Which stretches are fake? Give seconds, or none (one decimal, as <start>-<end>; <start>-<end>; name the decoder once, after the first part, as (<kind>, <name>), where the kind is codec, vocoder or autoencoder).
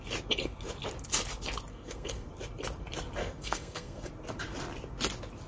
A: 1.7-2.3 (codec, SNAC); 3.2-4.1